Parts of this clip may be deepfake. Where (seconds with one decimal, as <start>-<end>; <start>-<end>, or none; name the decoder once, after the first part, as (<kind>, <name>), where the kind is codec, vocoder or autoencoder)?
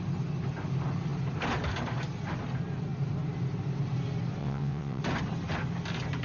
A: 4.4-5.0 (vocoder, WaveNeXt)